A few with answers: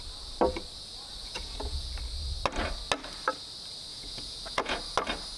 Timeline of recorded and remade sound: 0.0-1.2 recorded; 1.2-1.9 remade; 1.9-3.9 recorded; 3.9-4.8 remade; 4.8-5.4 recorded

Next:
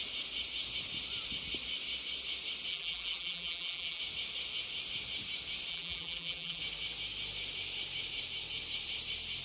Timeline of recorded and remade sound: 0.0-2.7 recorded; 2.7-4.0 remade; 4.0-5.7 recorded; 5.7-6.6 remade; 6.6-9.4 recorded

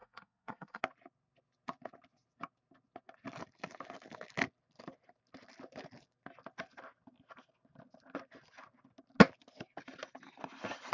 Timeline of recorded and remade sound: 0.0-0.8 remade; 0.8-10.9 recorded

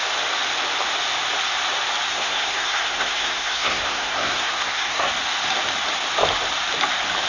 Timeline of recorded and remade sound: 0.0-2.1 recorded; 2.1-5.1 remade; 5.1-7.3 recorded

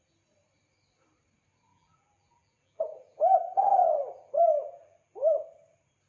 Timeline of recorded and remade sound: 0.0-1.7 recorded; 1.7-5.4 remade; 5.4-6.1 recorded

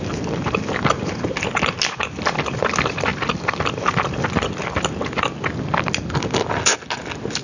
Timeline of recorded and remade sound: 0.0-7.4 recorded

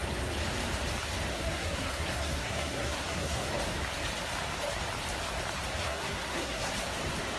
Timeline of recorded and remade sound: 0.0-1.3 recorded; 1.3-3.5 remade; 3.5-5.8 recorded; 5.8-6.7 remade; 6.7-7.4 recorded